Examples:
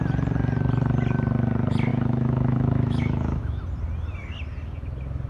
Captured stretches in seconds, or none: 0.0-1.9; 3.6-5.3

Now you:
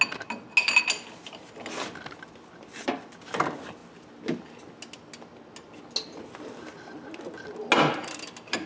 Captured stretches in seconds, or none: 0.0-8.7

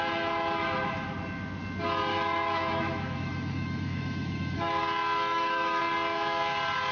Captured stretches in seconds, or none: 0.0-2.1; 4.8-5.3; 5.8-6.9

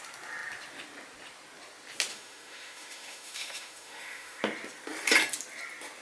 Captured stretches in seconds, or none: 0.0-2.1; 4.4-6.0

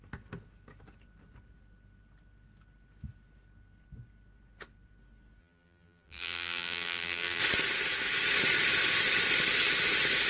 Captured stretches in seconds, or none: 0.0-5.4; 7.4-10.3

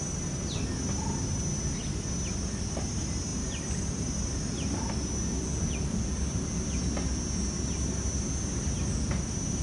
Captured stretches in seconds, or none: 0.0-9.6